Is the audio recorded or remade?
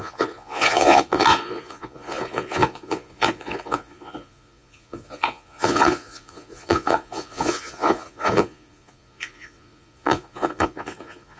remade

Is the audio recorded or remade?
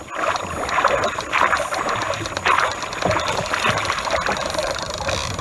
recorded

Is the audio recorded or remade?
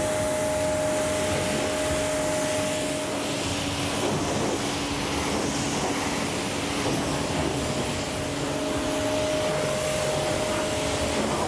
recorded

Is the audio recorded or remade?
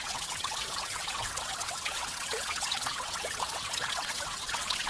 remade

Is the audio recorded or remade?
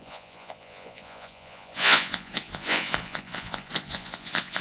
remade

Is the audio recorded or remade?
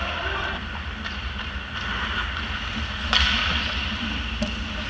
remade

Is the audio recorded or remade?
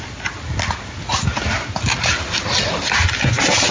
recorded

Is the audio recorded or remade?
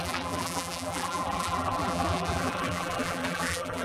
remade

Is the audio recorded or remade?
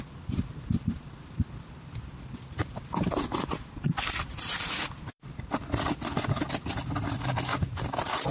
remade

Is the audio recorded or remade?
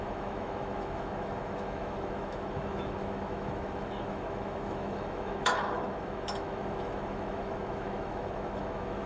remade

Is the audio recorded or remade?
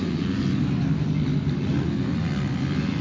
recorded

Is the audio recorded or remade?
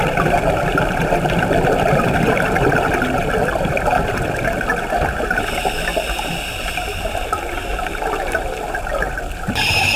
recorded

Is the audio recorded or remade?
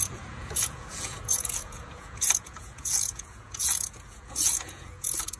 remade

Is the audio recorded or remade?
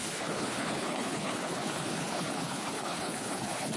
remade